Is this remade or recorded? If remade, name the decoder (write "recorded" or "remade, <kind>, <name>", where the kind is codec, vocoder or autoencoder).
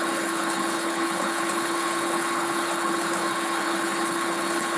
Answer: remade, codec, HILCodec